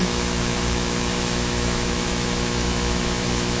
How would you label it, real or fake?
fake